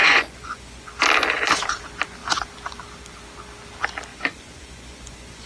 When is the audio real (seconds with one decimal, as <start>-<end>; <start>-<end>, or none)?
0.9-4.1

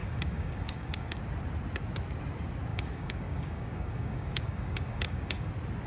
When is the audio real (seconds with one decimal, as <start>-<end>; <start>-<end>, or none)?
1.2-2.7; 5.5-5.9

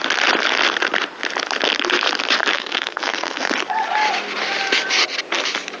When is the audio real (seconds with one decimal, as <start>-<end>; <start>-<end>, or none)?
0.0-2.5; 3.5-5.8